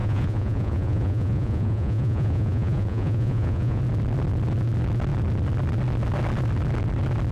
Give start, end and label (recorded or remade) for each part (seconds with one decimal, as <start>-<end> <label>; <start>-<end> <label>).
0.0-3.8 remade; 3.8-7.3 recorded